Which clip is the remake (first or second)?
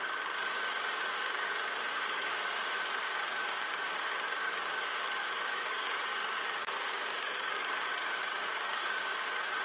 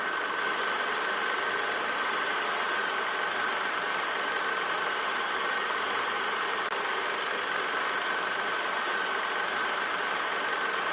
first